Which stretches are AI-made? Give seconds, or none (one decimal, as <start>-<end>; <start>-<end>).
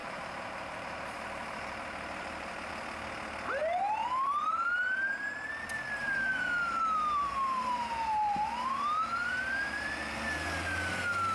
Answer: 0.0-2.7; 6.0-9.9